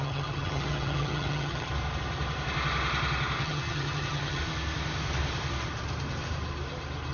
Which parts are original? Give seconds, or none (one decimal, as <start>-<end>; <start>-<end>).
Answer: 1.7-3.4; 4.4-7.1

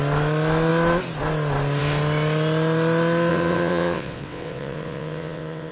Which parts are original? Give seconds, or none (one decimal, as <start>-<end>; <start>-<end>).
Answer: 0.0-3.3

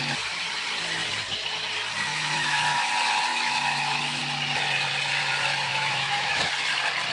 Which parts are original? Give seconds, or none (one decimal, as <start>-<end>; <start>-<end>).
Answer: 0.0-2.1; 2.9-3.3; 4.2-5.7; 6.5-7.1